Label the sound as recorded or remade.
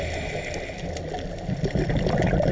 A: recorded